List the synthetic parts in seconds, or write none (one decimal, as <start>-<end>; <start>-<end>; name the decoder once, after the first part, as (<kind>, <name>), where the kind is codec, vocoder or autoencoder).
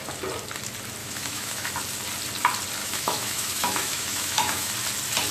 1.0-1.7 (autoencoder, DAC-VAE); 2.8-4.7